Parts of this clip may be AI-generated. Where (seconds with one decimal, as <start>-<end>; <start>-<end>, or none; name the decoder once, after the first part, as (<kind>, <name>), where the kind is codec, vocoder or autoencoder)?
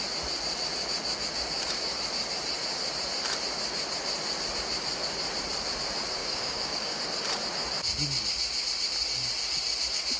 6.2-7.0 (codec, DAC)